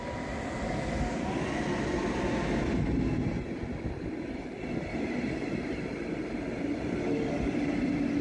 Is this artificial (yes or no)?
no